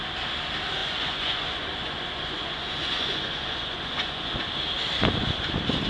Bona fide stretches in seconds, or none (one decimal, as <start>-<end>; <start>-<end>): 0.0-0.8; 4.3-5.9